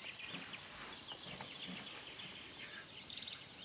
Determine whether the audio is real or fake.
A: real